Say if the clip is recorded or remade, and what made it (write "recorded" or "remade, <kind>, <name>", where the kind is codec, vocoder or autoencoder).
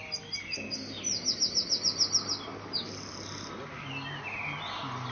recorded